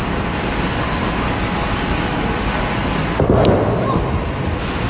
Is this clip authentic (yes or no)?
yes